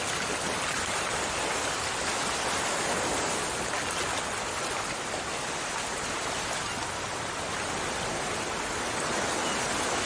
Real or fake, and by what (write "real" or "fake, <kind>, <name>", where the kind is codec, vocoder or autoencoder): real